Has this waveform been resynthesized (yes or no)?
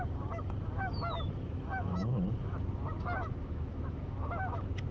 yes